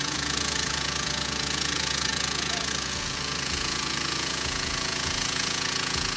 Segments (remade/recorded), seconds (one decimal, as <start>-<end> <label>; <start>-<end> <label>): 0.0-6.2 remade